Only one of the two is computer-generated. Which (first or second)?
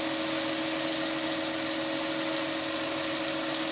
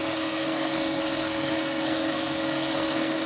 second